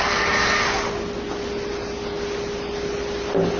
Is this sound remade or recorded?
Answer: recorded